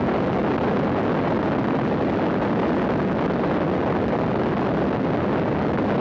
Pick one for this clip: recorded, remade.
recorded